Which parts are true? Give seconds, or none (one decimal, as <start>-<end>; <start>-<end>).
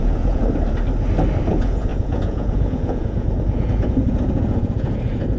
0.4-1.5